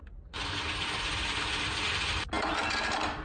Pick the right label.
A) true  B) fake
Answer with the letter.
A